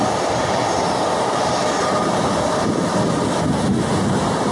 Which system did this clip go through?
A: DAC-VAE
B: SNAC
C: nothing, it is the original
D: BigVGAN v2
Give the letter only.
C